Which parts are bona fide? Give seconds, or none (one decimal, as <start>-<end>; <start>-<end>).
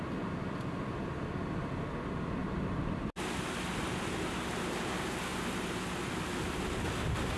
0.0-7.4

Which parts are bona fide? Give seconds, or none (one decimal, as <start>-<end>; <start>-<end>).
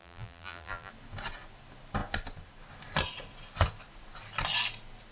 0.9-5.1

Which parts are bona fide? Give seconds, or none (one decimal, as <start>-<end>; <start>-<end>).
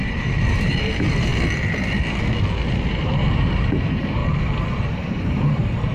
1.3-2.9; 4.2-4.9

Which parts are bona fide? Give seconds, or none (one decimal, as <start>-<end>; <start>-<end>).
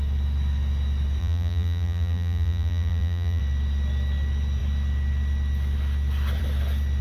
0.0-1.2; 3.4-7.0